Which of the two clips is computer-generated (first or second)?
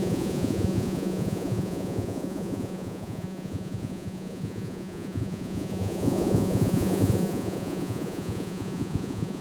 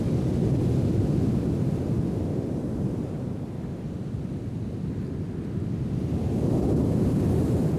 first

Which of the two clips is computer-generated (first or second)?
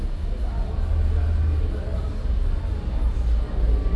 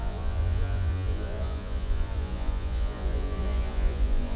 second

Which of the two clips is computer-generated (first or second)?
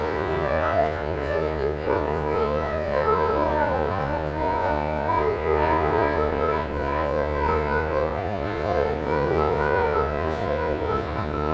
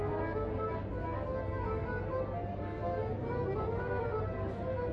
first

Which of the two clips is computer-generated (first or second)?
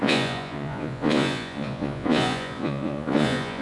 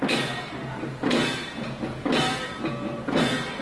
first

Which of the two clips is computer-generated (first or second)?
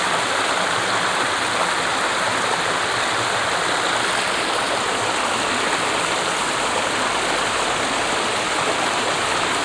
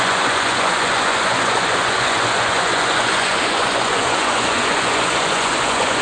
second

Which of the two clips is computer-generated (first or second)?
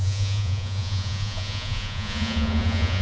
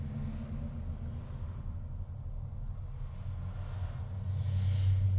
first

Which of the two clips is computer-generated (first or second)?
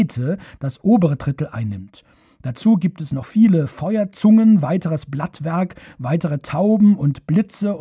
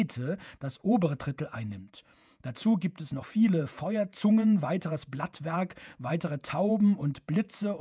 second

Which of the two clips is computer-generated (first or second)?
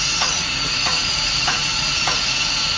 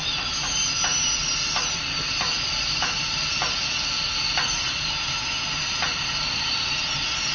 first